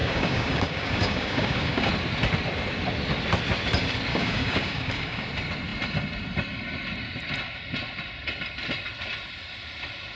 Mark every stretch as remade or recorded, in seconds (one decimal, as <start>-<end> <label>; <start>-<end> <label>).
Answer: 0.0-1.9 remade; 1.9-4.1 recorded; 4.1-5.3 remade; 5.3-10.2 recorded